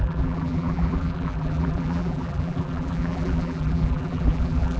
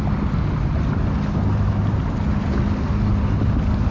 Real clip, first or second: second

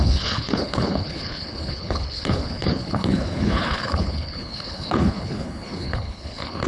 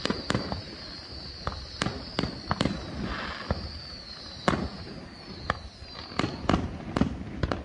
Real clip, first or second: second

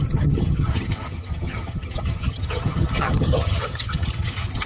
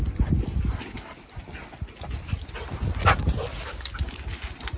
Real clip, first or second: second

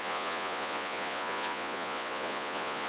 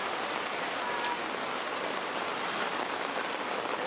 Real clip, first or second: second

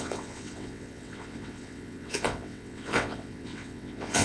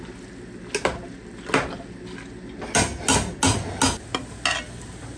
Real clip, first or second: second